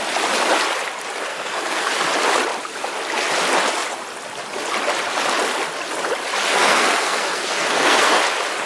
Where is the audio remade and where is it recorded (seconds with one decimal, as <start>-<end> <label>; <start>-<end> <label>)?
0.0-1.3 recorded; 1.3-1.9 remade; 1.9-6.5 recorded; 6.5-8.2 remade; 8.2-8.7 recorded